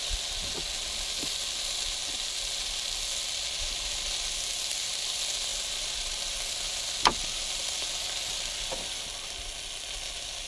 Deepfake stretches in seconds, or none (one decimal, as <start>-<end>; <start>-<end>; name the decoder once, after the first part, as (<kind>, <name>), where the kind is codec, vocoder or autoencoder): none

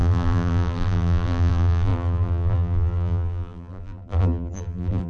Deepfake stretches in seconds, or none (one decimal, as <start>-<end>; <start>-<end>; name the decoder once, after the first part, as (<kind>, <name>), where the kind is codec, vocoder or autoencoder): 0.0-5.1 (vocoder, BigVGAN v2)

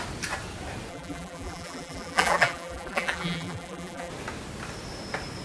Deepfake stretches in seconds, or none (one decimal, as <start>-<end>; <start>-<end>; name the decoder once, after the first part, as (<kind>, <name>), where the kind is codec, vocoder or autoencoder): 0.9-4.1 (vocoder, BigVGAN v2)